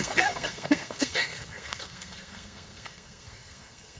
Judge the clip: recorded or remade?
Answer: remade